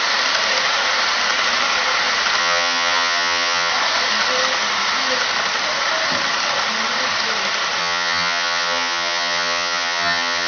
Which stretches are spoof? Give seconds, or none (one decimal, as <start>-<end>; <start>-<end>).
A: 2.4-3.7; 7.8-10.5